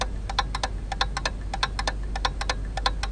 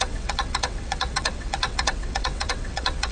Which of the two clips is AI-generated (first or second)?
second